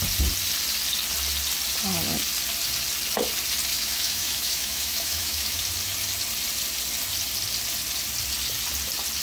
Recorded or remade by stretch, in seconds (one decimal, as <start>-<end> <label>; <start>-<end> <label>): 0.0-3.7 recorded; 3.7-5.6 remade; 5.6-9.2 recorded